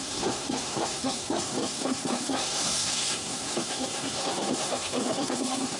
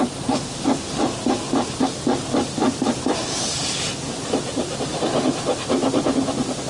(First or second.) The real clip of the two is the second